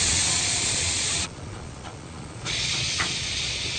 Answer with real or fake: fake